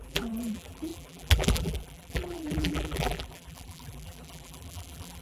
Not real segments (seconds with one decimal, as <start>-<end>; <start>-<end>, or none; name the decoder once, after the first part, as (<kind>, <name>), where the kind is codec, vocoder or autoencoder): 0.0-5.2 (vocoder, BigVGAN v2)